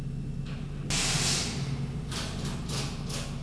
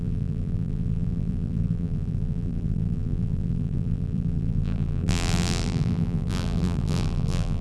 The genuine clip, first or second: first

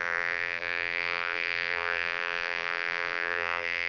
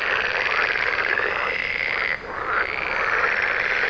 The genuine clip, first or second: second